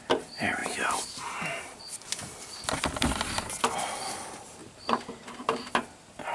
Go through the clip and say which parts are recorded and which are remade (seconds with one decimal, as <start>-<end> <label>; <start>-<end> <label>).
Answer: 0.0-0.6 recorded; 0.6-1.8 remade; 1.8-4.6 recorded; 4.6-5.6 remade; 5.6-6.3 recorded